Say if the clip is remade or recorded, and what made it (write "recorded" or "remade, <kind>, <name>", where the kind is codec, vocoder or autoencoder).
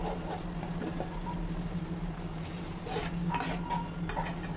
recorded